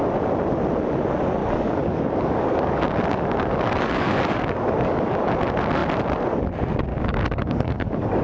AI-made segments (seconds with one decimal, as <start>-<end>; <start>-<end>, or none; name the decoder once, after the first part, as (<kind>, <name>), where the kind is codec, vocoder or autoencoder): 1.4-5.3 (codec, DAC); 6.9-8.2